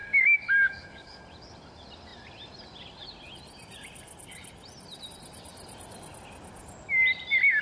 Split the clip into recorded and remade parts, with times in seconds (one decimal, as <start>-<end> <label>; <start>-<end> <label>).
0.0-1.2 remade; 1.2-7.6 recorded